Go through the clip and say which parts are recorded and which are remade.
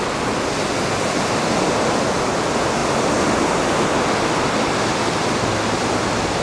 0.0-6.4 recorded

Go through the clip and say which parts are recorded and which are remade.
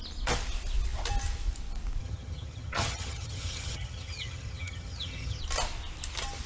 0.0-2.0 recorded; 2.0-5.4 remade; 5.4-6.5 recorded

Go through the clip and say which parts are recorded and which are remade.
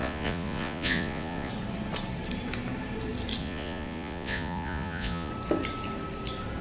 0.0-1.5 remade; 1.5-3.4 recorded; 3.4-5.3 remade; 5.3-6.6 recorded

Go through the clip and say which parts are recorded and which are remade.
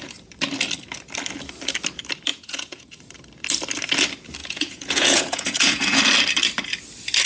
0.0-2.3 recorded; 2.3-3.0 remade; 3.0-4.4 recorded; 4.4-6.0 remade; 6.0-7.3 recorded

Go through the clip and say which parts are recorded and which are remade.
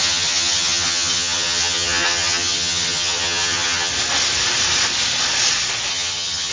0.0-3.9 remade; 3.9-5.9 recorded; 5.9-6.5 remade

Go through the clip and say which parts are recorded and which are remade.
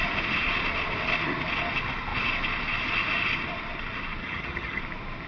0.0-4.2 recorded; 4.2-4.8 remade; 4.8-5.3 recorded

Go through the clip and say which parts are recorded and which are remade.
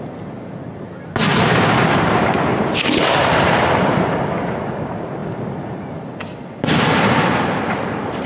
0.0-1.3 recorded; 1.3-2.2 remade; 2.2-3.2 recorded; 3.2-4.1 remade; 4.1-8.3 recorded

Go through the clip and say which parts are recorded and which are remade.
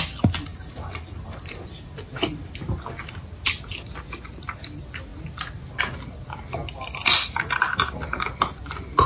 0.0-0.5 recorded; 0.5-1.1 remade; 1.1-7.0 recorded; 7.0-8.2 remade; 8.2-9.1 recorded